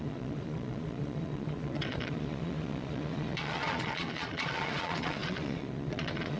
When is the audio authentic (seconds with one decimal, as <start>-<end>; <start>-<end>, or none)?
none